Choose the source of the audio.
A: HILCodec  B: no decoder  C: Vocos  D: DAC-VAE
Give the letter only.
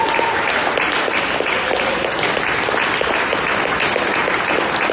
B